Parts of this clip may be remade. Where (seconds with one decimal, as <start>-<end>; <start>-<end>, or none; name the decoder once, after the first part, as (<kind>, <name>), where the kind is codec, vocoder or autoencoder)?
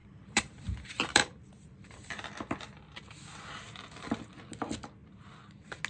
0.0-2.2 (vocoder, BigVGAN v2)